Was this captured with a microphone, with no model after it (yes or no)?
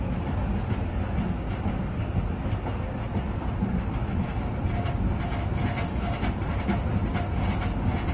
yes